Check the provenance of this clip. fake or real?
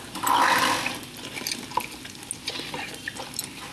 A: real